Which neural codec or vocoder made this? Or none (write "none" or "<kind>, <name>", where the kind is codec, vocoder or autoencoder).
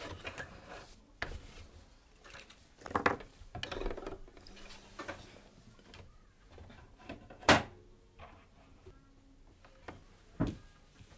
none